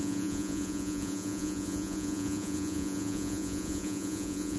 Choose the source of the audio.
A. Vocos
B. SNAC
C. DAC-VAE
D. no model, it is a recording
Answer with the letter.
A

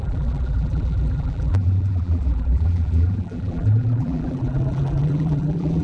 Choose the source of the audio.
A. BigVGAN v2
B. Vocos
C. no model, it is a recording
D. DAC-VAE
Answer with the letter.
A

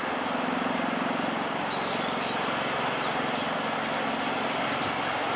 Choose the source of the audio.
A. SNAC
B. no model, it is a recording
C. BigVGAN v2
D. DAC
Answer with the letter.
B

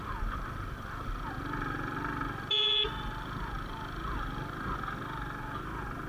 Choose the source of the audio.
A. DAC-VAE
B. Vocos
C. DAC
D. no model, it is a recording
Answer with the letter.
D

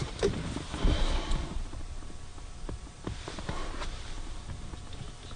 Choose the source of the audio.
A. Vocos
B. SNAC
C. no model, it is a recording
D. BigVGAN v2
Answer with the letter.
D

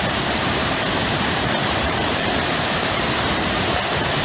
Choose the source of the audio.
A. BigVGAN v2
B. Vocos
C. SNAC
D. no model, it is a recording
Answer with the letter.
A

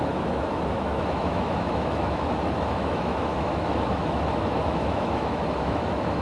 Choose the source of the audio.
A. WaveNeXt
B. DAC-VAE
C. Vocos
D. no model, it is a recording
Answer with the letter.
B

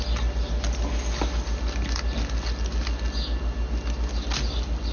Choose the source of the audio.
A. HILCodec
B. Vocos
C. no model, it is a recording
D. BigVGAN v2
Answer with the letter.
C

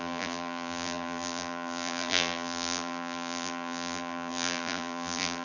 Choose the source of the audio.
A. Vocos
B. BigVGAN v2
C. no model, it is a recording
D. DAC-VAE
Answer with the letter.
B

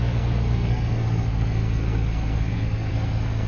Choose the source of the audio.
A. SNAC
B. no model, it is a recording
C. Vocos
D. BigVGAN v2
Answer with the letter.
A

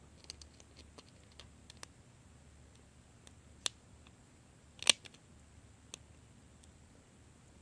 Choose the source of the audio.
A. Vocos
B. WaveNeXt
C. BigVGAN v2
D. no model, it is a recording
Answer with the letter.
D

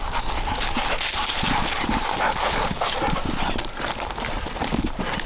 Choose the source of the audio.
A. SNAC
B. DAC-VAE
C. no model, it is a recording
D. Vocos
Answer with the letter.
C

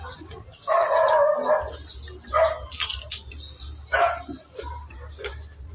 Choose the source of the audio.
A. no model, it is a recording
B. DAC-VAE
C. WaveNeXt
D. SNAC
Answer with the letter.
A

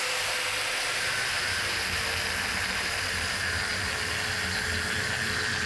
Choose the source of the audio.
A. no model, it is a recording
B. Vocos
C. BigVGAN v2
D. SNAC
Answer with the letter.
A